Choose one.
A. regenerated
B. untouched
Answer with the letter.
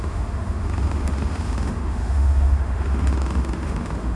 A